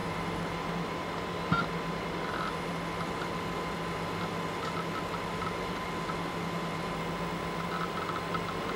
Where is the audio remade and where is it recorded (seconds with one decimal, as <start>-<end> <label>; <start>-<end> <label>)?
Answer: 0.0-8.8 recorded